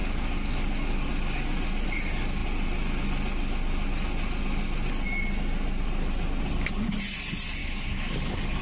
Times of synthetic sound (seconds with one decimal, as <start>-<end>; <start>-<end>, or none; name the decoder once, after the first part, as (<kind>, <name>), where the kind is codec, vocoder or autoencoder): 0.0-1.1 (codec, DAC); 7.6-8.6